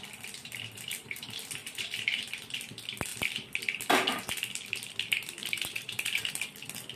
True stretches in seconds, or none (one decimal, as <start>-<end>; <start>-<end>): 0.0-0.4; 1.2-1.6; 2.2-5.4; 6.3-7.0